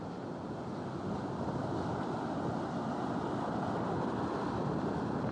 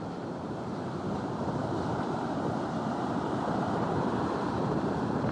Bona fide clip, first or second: first